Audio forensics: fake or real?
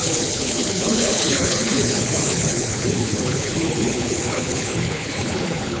fake